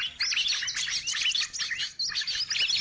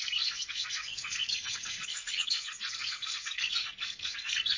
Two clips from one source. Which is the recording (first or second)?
first